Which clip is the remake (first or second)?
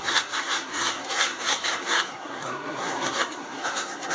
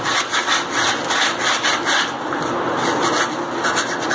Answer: first